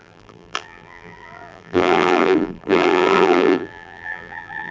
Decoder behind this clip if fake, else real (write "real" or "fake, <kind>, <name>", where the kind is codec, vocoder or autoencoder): fake, vocoder, BigVGAN v2